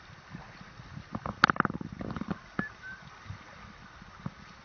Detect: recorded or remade recorded